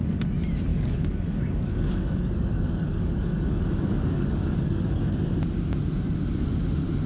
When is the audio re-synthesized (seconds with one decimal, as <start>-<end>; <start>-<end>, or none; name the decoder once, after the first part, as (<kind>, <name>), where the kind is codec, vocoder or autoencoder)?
0.7-5.0 (codec, DAC)